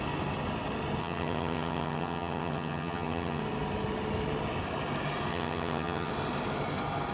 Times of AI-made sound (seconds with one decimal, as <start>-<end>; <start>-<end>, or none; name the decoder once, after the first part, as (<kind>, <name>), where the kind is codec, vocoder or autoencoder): 1.0-3.4 (vocoder, HiFi-GAN); 5.3-6.1